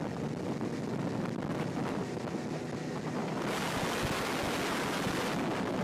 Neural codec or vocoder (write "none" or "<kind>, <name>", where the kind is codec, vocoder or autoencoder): none